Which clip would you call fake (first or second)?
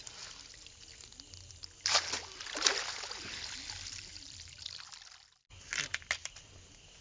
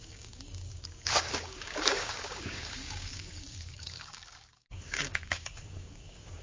second